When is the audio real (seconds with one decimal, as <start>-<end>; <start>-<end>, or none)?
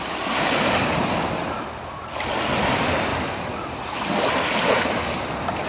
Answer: 0.0-5.7